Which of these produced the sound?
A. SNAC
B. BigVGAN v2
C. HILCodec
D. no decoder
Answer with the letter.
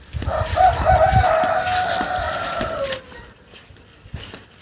D